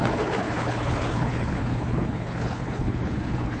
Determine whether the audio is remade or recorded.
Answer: remade